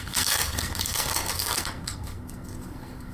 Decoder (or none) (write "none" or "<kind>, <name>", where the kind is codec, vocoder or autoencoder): codec, SNAC